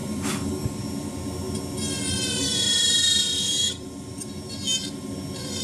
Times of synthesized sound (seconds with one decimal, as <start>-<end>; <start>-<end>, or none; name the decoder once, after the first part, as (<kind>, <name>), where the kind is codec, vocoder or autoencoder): 0.0-0.5 (vocoder, BigVGAN v2); 2.4-4.3